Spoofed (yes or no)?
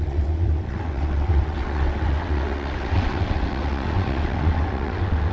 yes